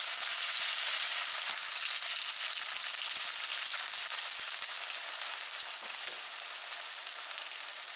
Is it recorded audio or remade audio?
recorded